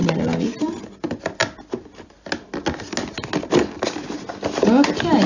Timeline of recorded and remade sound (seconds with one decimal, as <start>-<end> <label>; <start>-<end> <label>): 0.0-5.3 recorded